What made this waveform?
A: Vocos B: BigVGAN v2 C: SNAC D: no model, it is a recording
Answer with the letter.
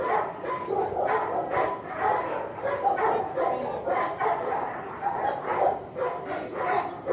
B